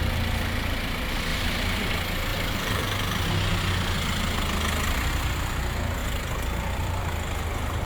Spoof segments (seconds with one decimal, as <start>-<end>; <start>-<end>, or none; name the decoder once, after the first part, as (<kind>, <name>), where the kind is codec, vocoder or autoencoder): 1.3-1.9 (vocoder, BigVGAN v2); 2.3-2.8